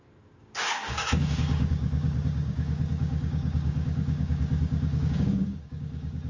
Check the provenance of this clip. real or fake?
fake